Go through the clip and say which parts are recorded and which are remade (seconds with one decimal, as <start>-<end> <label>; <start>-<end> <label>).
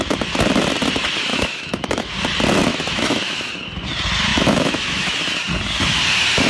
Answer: 0.0-1.3 recorded; 1.3-2.1 remade; 2.1-2.7 recorded; 2.7-3.5 remade; 3.5-4.3 recorded; 4.3-5.2 remade; 5.2-6.5 recorded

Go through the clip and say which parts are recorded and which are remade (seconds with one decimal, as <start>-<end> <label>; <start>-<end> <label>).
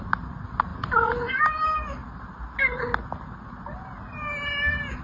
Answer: 0.0-5.0 recorded